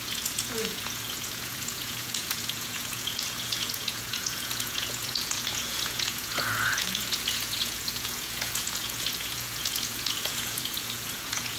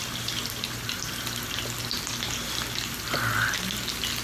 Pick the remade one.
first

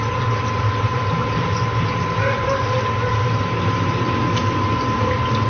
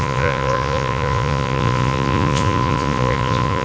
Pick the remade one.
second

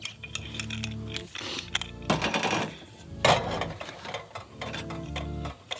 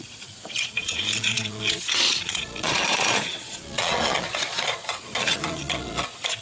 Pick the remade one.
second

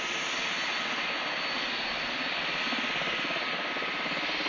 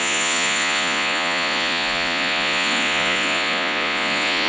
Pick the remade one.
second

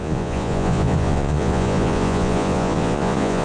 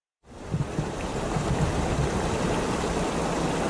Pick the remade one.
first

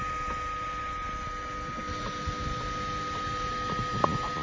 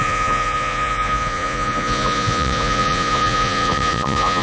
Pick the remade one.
second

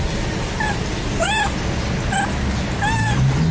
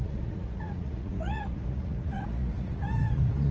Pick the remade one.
second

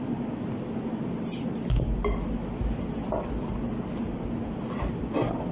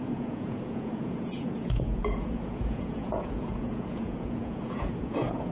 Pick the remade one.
second